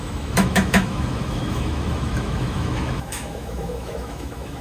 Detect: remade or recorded remade